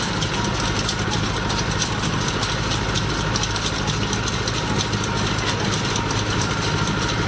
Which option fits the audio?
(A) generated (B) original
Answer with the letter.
B